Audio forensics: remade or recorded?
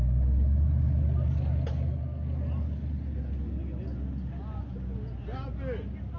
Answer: recorded